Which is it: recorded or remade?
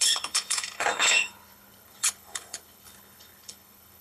remade